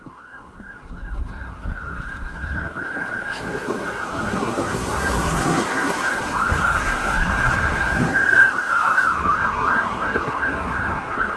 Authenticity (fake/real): fake